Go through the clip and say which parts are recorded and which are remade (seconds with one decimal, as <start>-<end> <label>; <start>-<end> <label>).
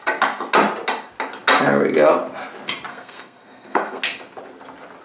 0.0-2.9 recorded; 2.9-4.0 remade; 4.0-5.0 recorded